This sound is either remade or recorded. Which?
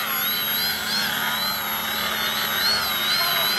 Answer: recorded